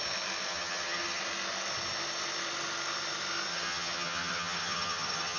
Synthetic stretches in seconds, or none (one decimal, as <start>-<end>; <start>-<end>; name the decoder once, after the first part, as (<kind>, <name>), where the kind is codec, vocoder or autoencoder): 0.5-1.2 (vocoder, HiFi-GAN); 3.5-5.4